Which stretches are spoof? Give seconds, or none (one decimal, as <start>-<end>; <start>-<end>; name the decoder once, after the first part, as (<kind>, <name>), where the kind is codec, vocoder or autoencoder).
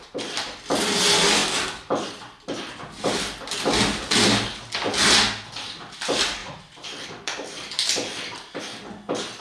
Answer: 1.4-2.1 (vocoder, BigVGAN v2); 6.4-8.6